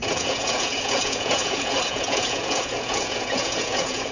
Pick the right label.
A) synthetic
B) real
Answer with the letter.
A